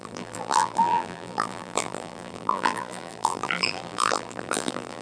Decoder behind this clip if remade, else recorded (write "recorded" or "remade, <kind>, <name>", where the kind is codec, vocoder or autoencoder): remade, vocoder, BigVGAN v2